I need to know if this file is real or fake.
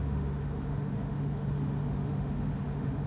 fake